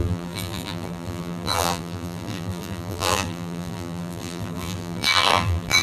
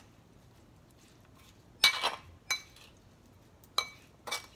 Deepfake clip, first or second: first